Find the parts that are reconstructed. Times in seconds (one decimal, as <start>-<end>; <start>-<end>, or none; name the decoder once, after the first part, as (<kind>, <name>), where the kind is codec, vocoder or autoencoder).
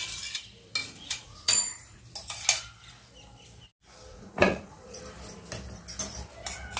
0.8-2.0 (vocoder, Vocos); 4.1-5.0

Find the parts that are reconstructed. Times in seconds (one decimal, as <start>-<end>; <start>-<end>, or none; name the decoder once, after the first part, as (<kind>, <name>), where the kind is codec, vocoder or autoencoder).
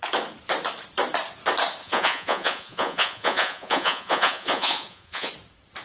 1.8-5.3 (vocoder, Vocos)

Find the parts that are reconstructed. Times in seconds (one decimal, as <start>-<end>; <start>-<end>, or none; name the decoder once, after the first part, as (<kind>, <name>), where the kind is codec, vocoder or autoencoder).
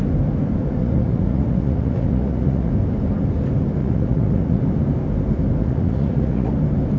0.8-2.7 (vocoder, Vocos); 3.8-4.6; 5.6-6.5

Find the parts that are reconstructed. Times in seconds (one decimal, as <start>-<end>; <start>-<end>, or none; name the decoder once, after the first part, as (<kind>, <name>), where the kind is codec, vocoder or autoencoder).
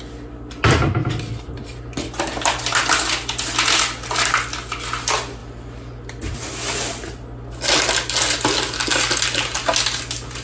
none